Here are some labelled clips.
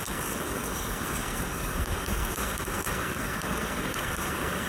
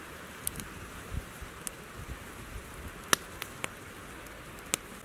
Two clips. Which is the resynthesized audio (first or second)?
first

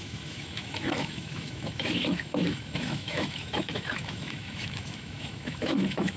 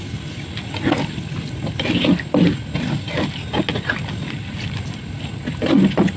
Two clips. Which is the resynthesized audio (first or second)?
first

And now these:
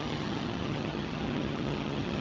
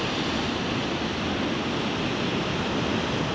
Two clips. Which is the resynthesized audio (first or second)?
first